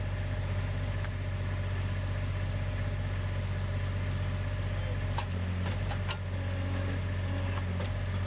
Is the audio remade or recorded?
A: recorded